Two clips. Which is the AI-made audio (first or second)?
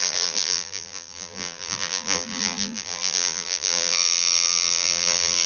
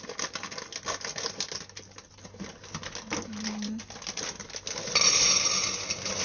first